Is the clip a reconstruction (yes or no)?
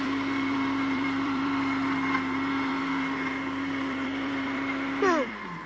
yes